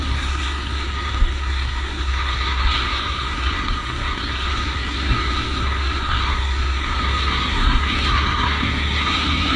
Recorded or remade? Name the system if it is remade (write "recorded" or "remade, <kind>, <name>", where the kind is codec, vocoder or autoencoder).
remade, codec, SNAC